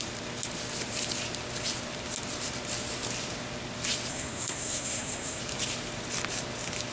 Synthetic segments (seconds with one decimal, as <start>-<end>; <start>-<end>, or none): 4.1-5.4